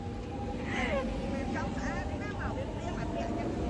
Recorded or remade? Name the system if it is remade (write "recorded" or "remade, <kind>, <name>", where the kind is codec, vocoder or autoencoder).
recorded